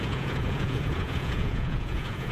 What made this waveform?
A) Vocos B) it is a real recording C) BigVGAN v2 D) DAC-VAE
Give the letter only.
A